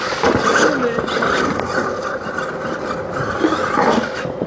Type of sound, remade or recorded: recorded